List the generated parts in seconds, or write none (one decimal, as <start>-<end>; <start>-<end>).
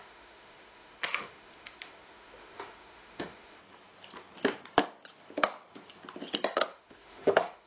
0.0-3.6; 6.7-7.7